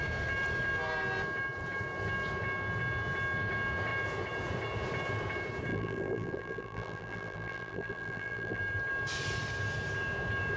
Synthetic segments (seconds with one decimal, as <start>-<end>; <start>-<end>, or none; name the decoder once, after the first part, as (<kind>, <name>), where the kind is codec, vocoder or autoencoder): 5.7-8.6 (vocoder, BigVGAN v2)